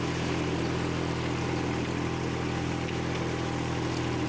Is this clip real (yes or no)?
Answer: yes